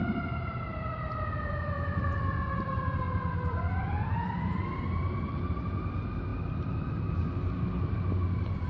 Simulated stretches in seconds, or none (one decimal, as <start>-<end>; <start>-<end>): 0.7-5.8; 6.3-6.9